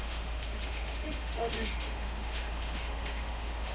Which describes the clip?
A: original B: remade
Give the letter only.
B